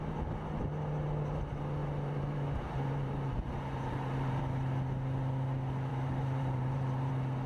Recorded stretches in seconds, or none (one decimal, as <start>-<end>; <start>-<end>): 0.0-1.8; 4.4-5.9; 7.1-7.5